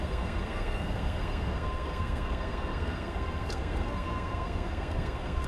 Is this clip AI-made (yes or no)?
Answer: yes